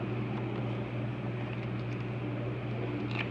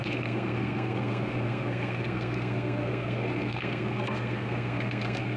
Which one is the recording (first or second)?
first